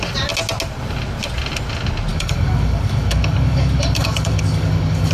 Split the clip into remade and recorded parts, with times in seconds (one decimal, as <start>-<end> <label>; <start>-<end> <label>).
0.0-2.1 recorded; 2.1-5.1 remade